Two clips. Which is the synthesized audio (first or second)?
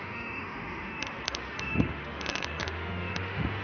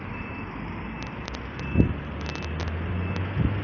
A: first